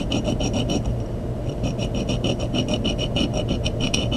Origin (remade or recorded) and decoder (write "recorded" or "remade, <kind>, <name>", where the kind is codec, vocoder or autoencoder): recorded